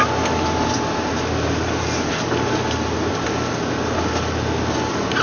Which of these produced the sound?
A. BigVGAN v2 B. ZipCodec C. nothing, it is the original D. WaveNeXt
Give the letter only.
C